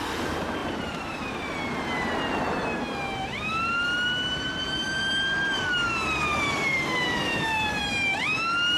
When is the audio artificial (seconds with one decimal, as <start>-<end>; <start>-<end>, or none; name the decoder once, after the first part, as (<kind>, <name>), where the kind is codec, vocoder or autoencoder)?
0.6-1.3 (vocoder, BigVGAN v2); 6.3-7.8